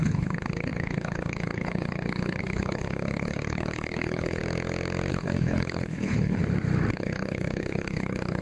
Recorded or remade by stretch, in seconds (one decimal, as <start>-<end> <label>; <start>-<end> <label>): 0.0-4.4 remade; 4.4-5.1 recorded; 5.1-6.4 remade; 6.4-6.9 recorded; 6.9-8.4 remade